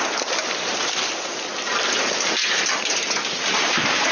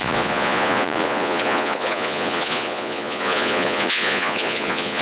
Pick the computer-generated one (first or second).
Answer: second